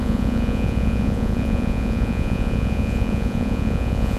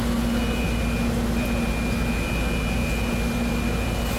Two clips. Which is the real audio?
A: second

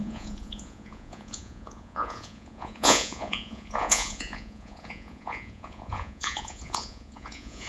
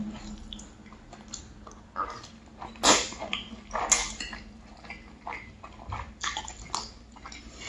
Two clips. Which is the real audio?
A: second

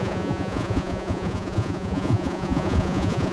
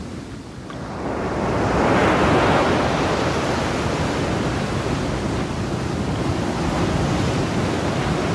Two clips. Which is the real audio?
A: second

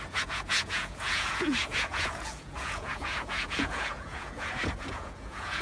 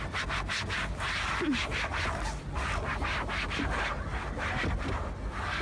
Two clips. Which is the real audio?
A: second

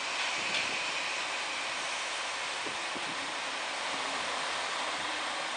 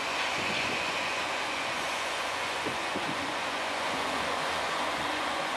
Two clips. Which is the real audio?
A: first